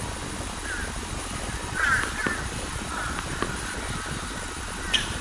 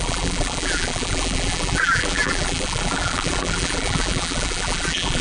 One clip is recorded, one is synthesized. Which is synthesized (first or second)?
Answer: second